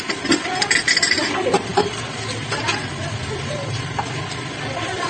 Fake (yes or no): no